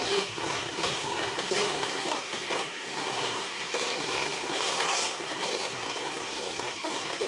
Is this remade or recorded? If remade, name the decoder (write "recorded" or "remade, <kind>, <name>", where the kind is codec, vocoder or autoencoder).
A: remade, codec, SNAC